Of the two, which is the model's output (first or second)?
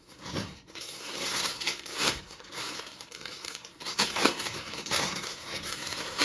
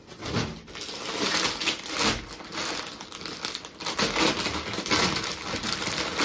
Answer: first